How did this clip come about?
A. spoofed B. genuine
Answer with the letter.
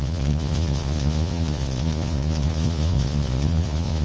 A